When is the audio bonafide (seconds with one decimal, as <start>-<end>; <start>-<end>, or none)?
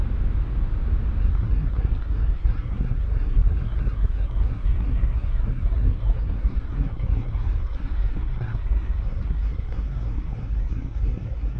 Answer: 0.0-1.2